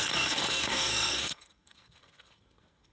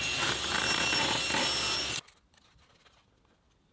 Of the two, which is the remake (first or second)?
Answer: first